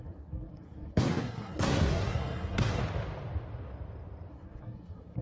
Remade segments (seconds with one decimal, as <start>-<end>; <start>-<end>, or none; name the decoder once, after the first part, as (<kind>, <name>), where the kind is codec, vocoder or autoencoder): 0.0-2.8 (codec, SNAC); 4.3-5.2